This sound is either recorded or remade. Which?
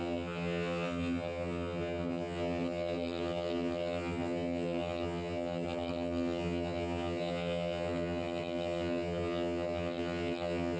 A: remade